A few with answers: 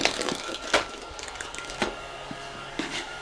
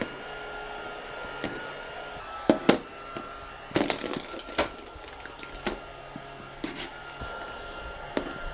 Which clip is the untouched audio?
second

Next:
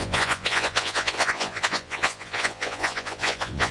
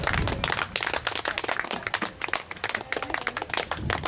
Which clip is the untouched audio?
second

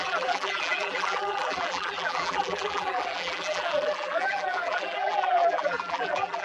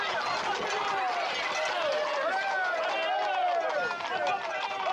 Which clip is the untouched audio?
second